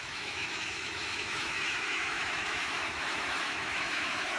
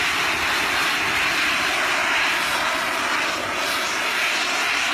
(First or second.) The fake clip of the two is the first